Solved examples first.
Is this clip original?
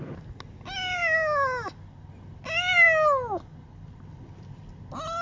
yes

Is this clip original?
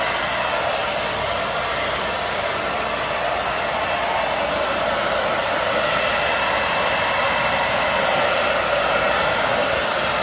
yes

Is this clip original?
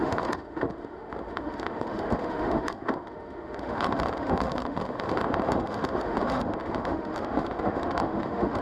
no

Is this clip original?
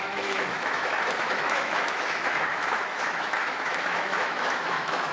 no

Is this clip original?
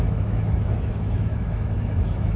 no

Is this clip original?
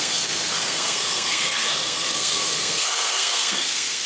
no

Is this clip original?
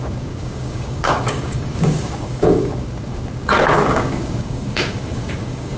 no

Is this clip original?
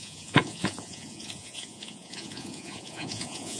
no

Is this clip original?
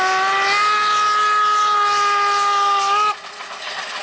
yes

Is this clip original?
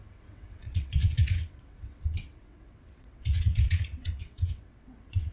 no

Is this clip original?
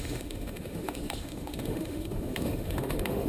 no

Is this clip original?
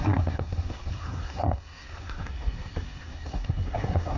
no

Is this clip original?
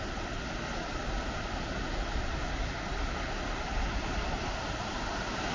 yes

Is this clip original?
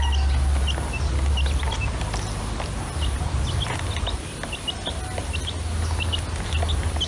yes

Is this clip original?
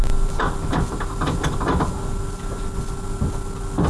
yes